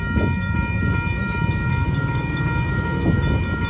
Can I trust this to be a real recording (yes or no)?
yes